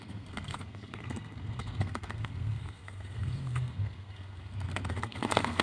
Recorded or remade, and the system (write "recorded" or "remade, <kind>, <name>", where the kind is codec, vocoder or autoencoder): remade, codec, SNAC